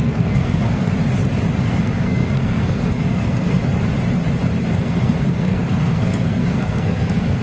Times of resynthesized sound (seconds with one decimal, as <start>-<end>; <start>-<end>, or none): 0.0-0.9; 1.6-3.6; 4.7-7.4